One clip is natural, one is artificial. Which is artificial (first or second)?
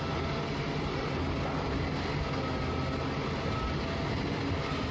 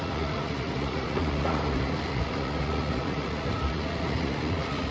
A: second